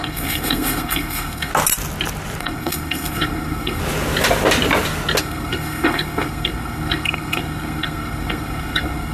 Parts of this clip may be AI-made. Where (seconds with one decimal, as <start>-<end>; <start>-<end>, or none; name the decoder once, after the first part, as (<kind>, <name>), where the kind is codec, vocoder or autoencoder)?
0.0-1.5 (codec, SNAC); 2.4-3.8; 5.2-9.1